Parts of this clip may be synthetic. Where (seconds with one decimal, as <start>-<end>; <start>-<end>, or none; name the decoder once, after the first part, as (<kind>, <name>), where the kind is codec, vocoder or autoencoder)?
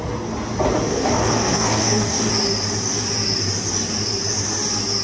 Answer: 0.9-2.3 (codec, DAC)